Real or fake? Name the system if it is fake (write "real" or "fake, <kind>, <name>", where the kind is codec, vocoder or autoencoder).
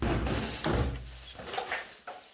real